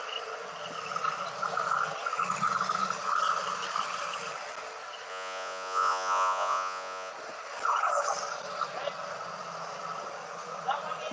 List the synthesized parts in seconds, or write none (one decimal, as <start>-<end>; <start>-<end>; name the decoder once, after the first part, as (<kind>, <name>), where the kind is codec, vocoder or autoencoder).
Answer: 5.1-7.1 (vocoder, Vocos)